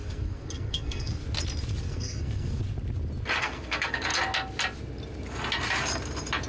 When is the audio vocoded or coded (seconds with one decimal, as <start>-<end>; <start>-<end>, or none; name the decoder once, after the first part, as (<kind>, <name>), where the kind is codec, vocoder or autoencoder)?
0.0-1.2 (codec, SNAC); 1.8-2.6; 3.4-4.1